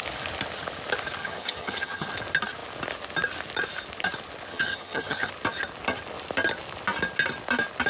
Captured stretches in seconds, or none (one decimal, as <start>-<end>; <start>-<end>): 0.0-1.2; 2.1-4.5; 5.3-7.9